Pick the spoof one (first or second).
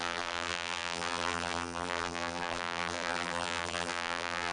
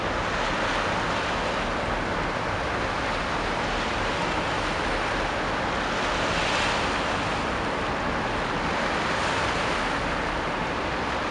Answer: first